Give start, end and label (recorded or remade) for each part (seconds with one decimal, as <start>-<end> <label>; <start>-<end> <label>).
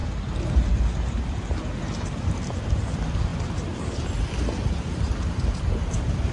0.0-6.3 recorded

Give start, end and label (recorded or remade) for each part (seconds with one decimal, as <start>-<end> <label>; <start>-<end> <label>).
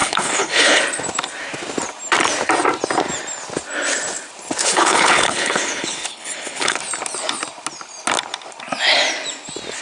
0.0-0.8 remade; 0.8-4.6 recorded; 4.6-6.8 remade; 6.8-9.8 recorded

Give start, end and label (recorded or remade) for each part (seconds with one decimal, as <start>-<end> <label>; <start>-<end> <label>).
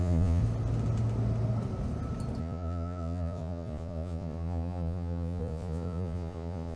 0.0-0.4 remade; 0.4-2.4 recorded; 2.4-6.8 remade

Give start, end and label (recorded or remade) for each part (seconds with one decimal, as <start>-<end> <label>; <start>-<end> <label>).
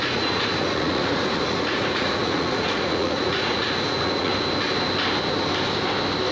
0.0-4.3 remade; 4.3-6.3 recorded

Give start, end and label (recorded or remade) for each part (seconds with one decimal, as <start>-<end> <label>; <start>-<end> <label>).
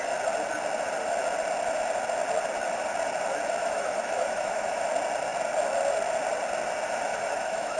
0.0-3.6 recorded; 3.6-4.8 remade; 4.8-7.1 recorded; 7.1-7.8 remade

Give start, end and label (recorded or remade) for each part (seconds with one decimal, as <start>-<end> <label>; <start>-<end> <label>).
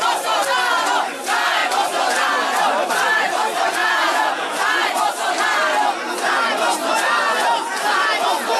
0.0-3.8 recorded; 3.8-4.6 remade; 4.6-8.6 recorded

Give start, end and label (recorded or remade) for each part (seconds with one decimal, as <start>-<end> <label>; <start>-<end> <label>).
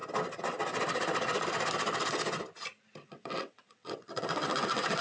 0.0-3.0 recorded; 3.0-5.0 remade